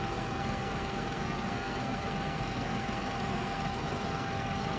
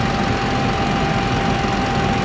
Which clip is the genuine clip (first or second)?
second